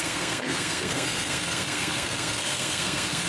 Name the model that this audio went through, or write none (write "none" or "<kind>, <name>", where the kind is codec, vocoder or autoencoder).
codec, SNAC